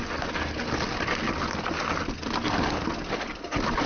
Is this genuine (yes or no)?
yes